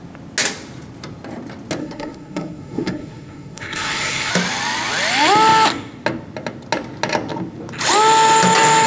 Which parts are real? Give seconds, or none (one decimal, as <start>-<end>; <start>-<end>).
0.0-1.8; 4.3-8.9